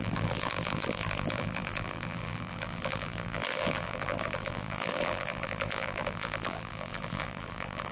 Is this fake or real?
fake